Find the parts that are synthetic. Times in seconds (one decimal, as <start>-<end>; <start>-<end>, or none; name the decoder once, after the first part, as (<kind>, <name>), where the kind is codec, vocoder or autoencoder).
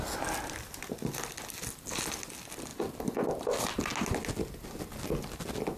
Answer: none